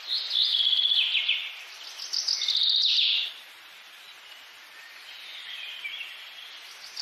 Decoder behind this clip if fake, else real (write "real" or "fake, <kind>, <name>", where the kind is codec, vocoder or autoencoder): real